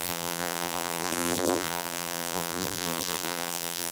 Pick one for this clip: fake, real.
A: fake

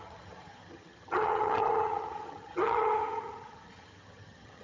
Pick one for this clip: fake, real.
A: fake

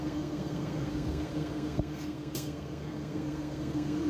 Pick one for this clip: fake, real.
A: fake